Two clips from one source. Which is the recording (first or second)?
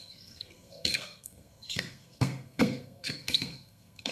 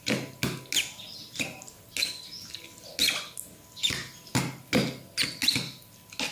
second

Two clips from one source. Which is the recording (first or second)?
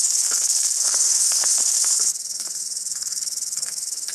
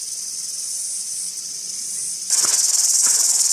second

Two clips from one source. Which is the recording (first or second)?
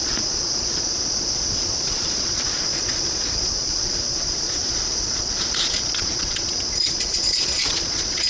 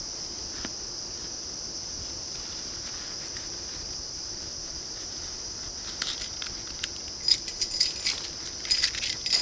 second